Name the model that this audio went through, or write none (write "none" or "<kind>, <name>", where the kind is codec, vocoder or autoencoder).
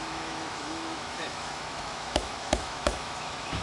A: autoencoder, DAC-VAE